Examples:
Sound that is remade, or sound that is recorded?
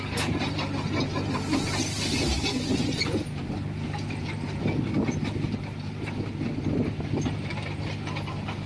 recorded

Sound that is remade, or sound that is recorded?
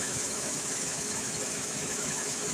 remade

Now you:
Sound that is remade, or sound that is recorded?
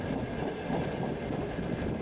recorded